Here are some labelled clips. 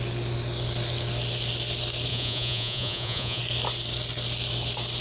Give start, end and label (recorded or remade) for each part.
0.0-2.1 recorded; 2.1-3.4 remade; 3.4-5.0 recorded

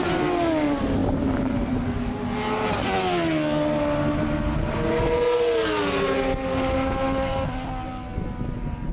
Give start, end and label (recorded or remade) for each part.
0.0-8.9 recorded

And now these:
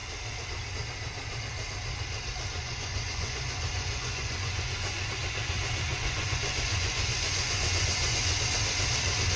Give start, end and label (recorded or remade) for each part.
0.0-2.6 recorded; 2.6-5.1 remade; 5.1-5.9 recorded; 5.9-8.3 remade; 8.3-9.4 recorded

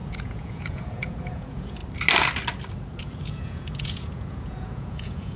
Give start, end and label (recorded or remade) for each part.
0.0-1.8 remade; 1.8-3.0 recorded; 3.0-5.4 remade